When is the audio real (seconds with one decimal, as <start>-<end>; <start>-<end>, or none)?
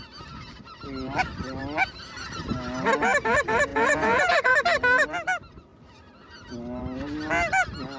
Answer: 0.0-3.7; 4.5-8.0